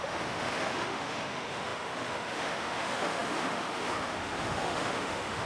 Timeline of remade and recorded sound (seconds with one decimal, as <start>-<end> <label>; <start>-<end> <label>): 0.0-5.5 remade